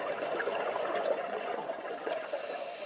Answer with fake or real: fake